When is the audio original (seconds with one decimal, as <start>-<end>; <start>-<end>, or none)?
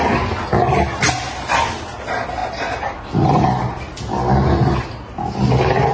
0.0-5.9